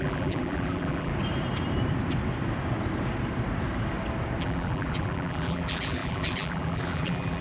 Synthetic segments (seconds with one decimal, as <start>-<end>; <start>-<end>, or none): 0.0-1.1; 4.4-7.4